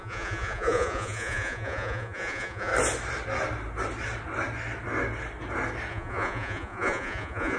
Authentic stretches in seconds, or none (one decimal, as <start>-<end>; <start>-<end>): 2.7-5.9